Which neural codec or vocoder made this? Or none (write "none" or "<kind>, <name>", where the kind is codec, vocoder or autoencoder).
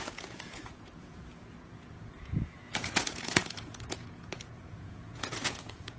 vocoder, Vocos